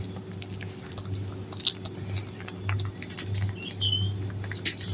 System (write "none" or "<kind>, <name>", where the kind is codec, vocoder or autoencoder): none